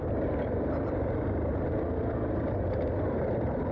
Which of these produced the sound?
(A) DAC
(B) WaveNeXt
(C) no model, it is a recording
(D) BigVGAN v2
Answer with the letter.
C